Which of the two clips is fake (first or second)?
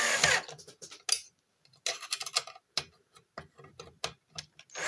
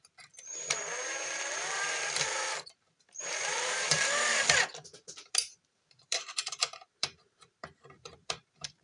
second